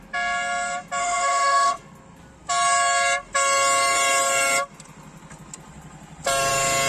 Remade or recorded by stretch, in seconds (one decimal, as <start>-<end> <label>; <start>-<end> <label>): 0.0-1.0 recorded; 1.0-1.8 remade; 1.8-6.9 recorded